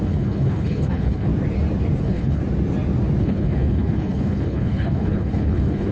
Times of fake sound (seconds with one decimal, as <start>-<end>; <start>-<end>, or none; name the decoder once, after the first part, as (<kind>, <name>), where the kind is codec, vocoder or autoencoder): 0.0-1.3 (codec, HILCodec); 2.0-2.4; 3.2-5.9